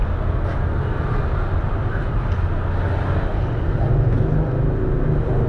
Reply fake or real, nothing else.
real